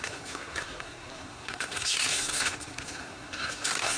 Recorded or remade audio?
remade